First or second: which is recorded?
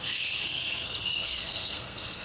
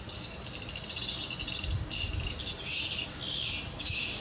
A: second